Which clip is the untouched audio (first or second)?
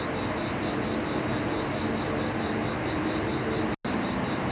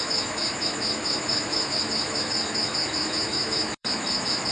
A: first